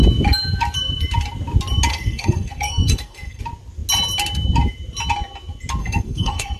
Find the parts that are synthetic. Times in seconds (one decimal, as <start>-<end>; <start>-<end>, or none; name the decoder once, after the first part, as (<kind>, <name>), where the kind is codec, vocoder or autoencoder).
1.9-3.4 (codec, SNAC); 5.8-6.6

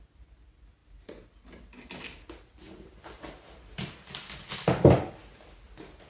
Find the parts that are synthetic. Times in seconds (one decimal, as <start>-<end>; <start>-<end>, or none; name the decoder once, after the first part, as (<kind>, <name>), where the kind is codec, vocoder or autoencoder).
none

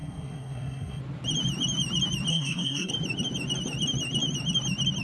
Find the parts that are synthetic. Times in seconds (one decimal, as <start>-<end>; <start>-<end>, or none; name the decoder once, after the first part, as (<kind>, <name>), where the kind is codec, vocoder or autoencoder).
0.0-1.0 (codec, SNAC); 2.3-2.9

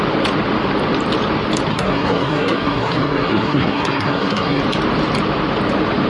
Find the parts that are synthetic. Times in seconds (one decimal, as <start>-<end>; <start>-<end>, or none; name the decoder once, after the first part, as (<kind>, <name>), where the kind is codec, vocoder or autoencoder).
1.7-4.6 (codec, SNAC)

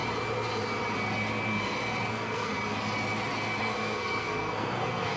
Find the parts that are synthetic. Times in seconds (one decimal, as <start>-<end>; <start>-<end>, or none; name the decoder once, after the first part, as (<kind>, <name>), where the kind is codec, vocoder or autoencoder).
2.1-2.5 (codec, SNAC); 3.6-5.2

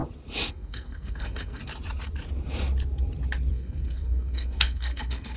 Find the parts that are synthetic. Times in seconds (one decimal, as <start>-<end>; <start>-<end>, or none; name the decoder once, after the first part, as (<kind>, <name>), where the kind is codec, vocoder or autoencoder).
0.5-1.6 (codec, SNAC); 3.5-5.4

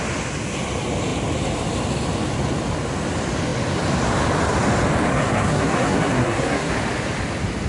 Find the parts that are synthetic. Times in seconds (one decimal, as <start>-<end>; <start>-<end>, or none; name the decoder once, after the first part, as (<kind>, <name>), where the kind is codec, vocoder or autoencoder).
5.1-6.7 (codec, SNAC)

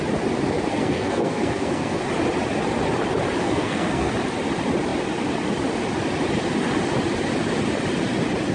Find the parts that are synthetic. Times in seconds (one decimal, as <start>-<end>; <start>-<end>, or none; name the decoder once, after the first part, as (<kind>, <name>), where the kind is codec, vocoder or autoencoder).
0.7-2.0 (codec, SNAC); 3.4-4.1